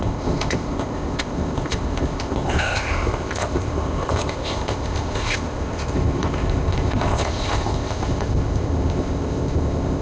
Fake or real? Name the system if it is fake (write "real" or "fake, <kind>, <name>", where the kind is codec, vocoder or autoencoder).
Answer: fake, codec, ZipCodec